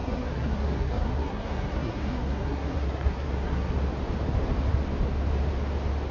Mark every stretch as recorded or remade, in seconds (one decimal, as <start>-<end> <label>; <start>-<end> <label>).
0.0-3.7 remade; 3.7-6.1 recorded